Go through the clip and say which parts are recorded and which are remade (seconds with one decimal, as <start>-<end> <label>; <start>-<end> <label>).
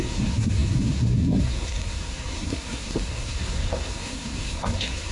0.0-5.1 remade